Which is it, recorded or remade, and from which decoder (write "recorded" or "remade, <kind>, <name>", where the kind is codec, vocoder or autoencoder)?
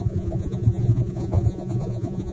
remade, vocoder, Vocos